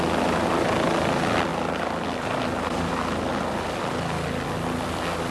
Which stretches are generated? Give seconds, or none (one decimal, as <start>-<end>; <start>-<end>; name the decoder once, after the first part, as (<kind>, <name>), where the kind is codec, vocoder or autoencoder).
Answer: none